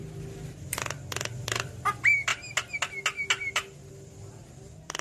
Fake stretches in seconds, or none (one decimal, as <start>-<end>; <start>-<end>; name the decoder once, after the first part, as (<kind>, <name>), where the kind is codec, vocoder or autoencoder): 0.8-2.3 (vocoder, BigVGAN v2); 3.9-5.0

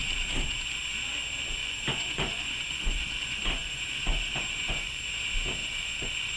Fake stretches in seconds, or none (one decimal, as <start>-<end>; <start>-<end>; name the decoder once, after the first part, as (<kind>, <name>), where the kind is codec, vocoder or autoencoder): 1.6-5.0 (vocoder, Vocos); 5.6-6.4

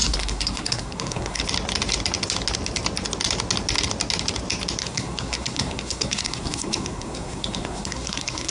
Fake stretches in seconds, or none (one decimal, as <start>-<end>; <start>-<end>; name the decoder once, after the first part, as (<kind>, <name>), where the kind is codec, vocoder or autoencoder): 0.0-1.4 (codec, SNAC); 4.8-8.5

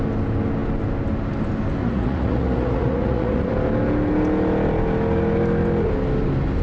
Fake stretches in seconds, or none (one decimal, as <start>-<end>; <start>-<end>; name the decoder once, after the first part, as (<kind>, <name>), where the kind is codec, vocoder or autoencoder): 1.8-3.5 (vocoder, Vocos)

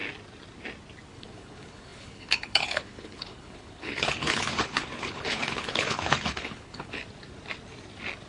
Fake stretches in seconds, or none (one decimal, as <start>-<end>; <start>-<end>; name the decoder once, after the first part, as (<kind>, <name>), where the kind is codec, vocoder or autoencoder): 1.1-7.0 (codec, HILCodec)

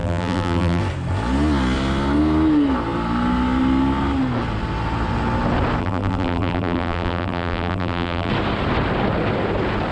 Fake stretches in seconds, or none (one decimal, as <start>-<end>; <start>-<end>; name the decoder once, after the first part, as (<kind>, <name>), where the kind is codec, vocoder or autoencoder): 0.0-0.8 (vocoder, BigVGAN v2); 5.8-8.3